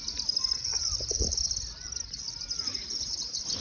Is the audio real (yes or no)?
yes